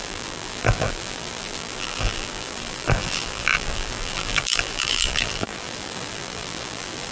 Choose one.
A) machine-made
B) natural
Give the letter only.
A